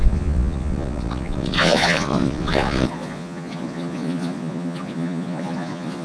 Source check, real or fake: fake